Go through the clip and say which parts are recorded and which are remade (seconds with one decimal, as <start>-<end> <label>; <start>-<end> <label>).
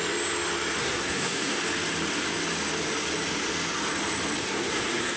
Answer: 0.0-0.8 recorded; 0.8-1.6 remade; 1.6-4.4 recorded; 4.4-5.2 remade